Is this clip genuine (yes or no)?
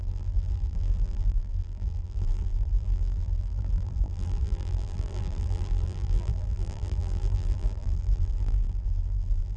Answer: no